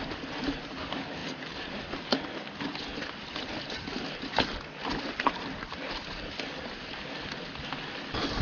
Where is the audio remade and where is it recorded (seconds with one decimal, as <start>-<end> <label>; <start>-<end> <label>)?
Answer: 0.0-8.4 recorded